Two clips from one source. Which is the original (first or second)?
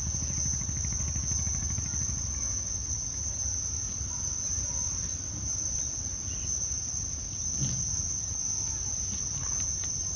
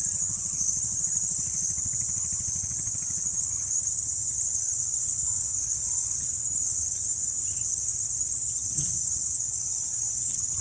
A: first